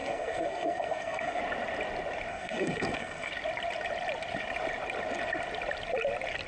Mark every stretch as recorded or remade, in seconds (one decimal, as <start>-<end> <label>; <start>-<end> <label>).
0.0-1.4 remade; 1.4-2.3 recorded; 2.3-3.3 remade; 3.3-6.5 recorded

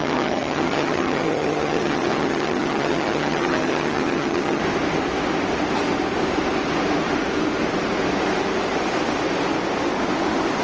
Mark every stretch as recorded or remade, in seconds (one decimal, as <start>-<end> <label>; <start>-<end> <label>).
0.0-4.6 remade; 4.6-10.6 recorded

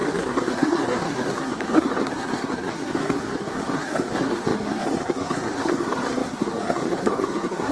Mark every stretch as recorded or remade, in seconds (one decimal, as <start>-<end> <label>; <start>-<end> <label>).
0.0-7.7 remade

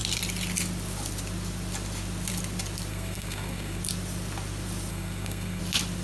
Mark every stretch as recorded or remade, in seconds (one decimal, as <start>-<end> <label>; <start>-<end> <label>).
0.0-2.9 recorded; 2.9-3.8 remade; 3.8-4.9 recorded; 4.9-5.6 remade; 5.6-6.0 recorded

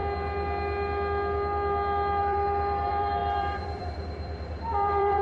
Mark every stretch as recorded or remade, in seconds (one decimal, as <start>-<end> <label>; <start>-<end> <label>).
0.0-2.2 recorded; 2.2-5.2 remade

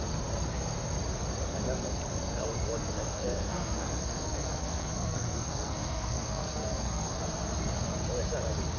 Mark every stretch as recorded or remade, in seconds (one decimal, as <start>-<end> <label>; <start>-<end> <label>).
0.0-3.1 recorded; 3.1-7.2 remade; 7.2-8.8 recorded

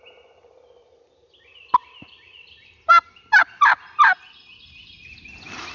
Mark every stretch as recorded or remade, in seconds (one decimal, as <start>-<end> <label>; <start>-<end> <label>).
0.0-5.7 remade

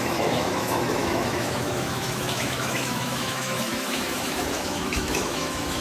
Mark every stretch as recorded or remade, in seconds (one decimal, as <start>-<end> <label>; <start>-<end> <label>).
0.0-5.8 remade